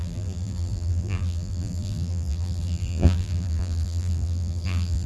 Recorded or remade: remade